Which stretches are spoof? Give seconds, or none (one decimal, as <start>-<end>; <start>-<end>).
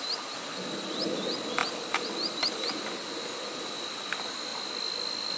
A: none